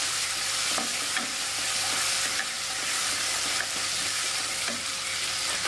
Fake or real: real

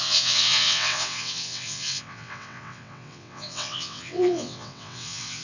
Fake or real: fake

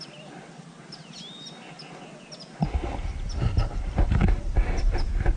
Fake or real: real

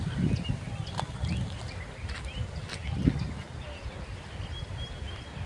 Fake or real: real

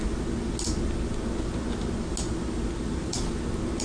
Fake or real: real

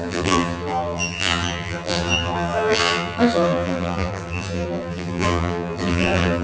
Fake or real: fake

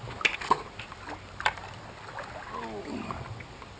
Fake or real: real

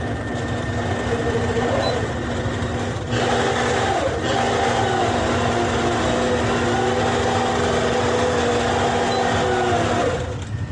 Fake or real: real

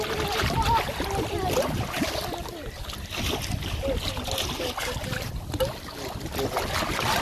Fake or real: real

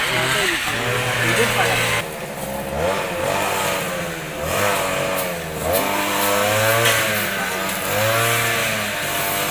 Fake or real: real